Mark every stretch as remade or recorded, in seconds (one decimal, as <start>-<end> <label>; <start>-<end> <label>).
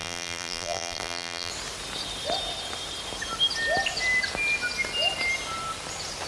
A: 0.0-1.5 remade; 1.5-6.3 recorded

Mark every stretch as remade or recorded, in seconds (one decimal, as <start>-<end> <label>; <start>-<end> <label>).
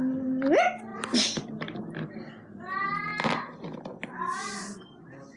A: 0.0-0.9 recorded; 0.9-1.8 remade; 1.8-5.4 recorded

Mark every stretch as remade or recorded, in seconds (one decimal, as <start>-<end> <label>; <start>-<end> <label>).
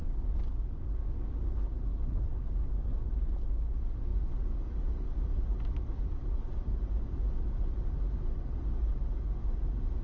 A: 0.0-4.1 recorded; 4.1-6.1 remade; 6.1-10.0 recorded